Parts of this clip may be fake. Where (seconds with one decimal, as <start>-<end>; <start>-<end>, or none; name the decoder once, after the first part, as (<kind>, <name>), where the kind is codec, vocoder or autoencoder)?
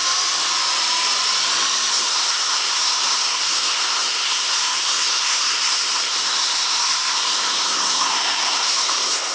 1.9-9.3 (codec, SNAC)